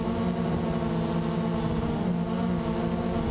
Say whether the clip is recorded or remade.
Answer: recorded